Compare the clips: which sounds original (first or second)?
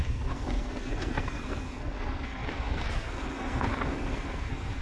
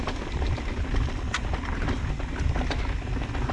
second